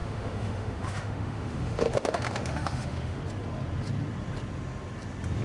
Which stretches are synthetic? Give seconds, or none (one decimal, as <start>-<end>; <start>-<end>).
0.0-3.2